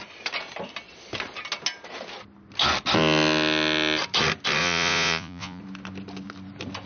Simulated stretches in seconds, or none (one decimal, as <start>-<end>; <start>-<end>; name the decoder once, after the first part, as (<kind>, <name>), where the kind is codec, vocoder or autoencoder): 4.6-5.6 (vocoder, Vocos)